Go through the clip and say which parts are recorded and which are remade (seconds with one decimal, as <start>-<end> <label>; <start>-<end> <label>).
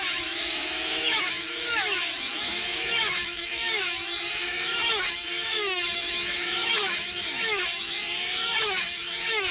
0.0-9.5 remade